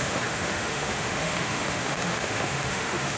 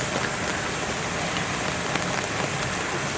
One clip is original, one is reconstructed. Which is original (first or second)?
second